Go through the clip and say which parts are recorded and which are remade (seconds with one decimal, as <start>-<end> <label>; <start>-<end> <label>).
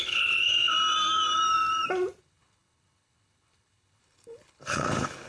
0.0-0.5 remade; 0.5-2.2 recorded; 2.2-5.3 remade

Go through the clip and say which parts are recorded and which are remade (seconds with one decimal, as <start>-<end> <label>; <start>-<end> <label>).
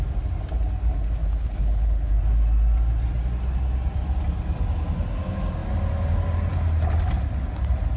0.0-1.2 recorded; 1.2-2.1 remade; 2.1-8.0 recorded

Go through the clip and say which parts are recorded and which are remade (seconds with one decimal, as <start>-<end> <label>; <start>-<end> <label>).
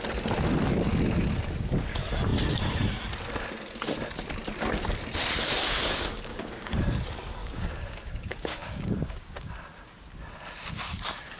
0.0-6.3 recorded; 6.3-6.8 remade; 6.8-7.4 recorded; 7.4-9.5 remade; 9.5-11.4 recorded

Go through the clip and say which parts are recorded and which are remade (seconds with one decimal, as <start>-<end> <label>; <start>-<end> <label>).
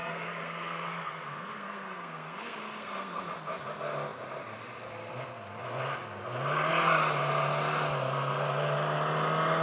0.0-3.2 remade; 3.2-9.6 recorded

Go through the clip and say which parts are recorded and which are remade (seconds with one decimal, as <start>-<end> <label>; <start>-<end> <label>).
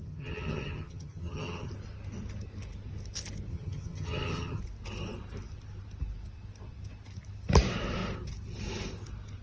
0.0-1.7 remade; 1.7-3.5 recorded; 3.5-4.6 remade; 4.6-9.4 recorded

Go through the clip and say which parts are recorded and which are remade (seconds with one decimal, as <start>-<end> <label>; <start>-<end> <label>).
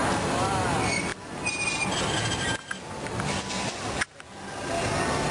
0.0-5.3 recorded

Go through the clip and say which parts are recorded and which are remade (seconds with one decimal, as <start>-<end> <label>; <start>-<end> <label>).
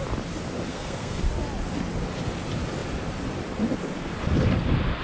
0.0-0.7 recorded; 0.7-1.2 remade; 1.2-5.0 recorded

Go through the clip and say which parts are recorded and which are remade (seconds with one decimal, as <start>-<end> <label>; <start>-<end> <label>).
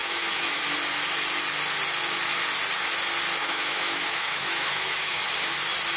0.0-0.6 remade; 0.6-3.4 recorded; 3.4-5.2 remade; 5.2-6.0 recorded